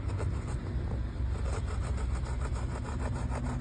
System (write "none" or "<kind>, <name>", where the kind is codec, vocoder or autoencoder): none